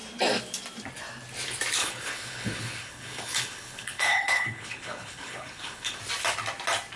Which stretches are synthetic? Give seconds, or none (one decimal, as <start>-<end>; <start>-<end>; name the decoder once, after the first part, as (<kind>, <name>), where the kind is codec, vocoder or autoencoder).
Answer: 1.8-6.0 (codec, HILCodec)